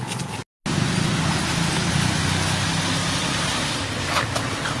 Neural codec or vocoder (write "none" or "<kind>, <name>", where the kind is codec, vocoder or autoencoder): none